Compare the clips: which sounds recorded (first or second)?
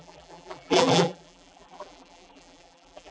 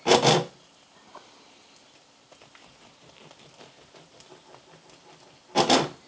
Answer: second